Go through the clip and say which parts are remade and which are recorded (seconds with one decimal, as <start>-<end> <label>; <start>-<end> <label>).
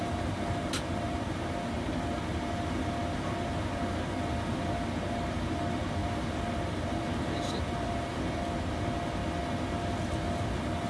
0.0-1.3 remade; 1.3-6.0 recorded; 6.0-8.4 remade; 8.4-10.9 recorded